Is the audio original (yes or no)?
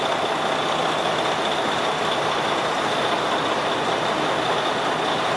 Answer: yes